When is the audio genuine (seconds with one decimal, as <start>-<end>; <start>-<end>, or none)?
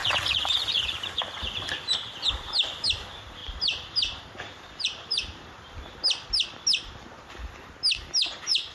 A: 1.2-3.4; 5.7-8.7